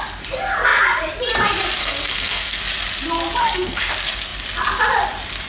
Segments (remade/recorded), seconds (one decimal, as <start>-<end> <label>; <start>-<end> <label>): 0.0-1.8 recorded; 1.8-2.6 remade; 2.6-3.4 recorded; 3.4-3.9 remade; 3.9-5.5 recorded